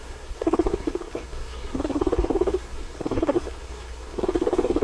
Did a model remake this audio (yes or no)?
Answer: yes